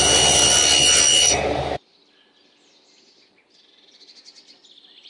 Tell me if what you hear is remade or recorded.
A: recorded